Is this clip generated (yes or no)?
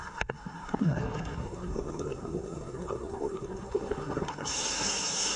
yes